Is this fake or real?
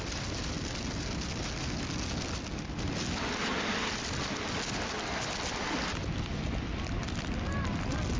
real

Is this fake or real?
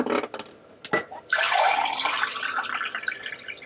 real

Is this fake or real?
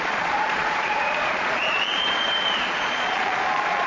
fake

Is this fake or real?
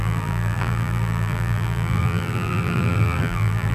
fake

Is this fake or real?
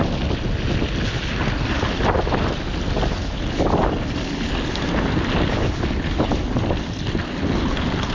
real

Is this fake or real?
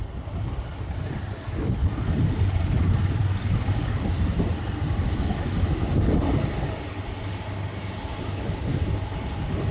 real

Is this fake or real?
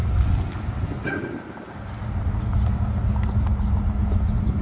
real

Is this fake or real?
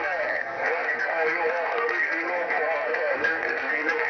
fake